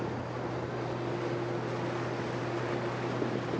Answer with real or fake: real